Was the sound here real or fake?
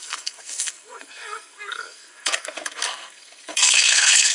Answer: fake